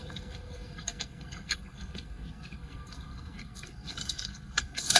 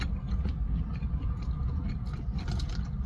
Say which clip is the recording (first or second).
second